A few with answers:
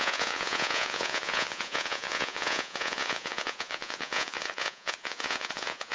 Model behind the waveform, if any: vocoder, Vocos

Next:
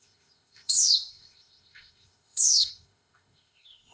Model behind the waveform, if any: codec, ZipCodec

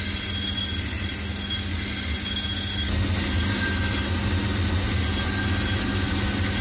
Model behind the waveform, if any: none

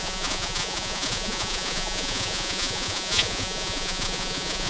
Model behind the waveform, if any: vocoder, Vocos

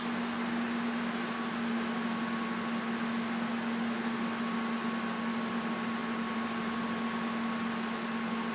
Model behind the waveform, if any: none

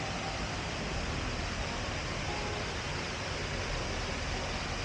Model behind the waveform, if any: none